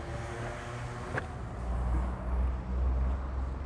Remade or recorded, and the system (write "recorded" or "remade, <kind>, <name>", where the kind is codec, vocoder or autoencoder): recorded